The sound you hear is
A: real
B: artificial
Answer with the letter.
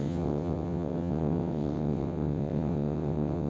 B